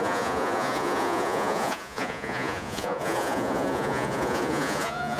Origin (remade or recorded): remade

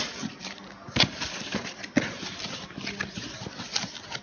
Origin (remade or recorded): recorded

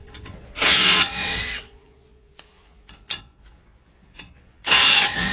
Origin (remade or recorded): remade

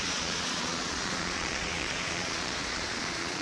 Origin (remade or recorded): remade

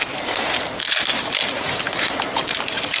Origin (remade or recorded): recorded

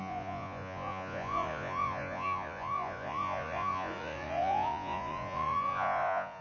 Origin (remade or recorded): remade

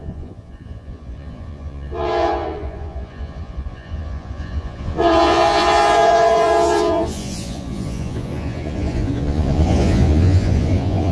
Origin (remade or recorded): remade